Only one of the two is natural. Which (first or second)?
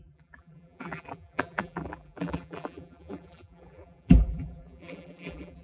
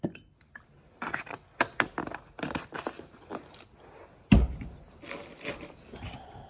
second